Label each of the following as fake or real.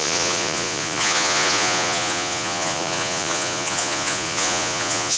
fake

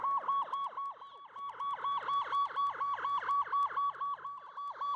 real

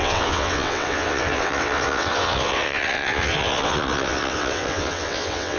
fake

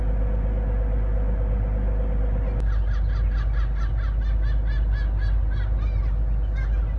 real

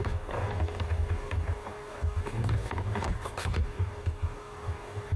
fake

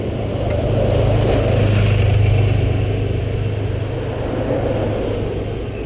real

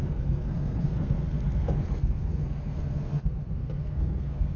fake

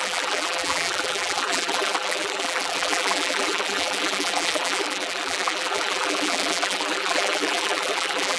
fake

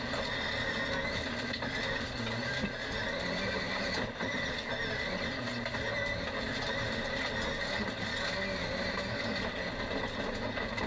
real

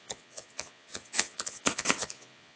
fake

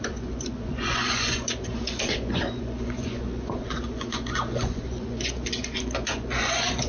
fake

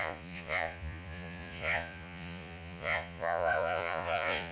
fake